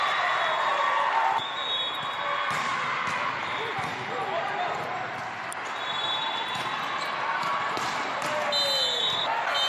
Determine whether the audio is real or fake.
real